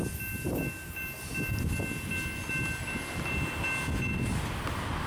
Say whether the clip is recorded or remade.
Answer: recorded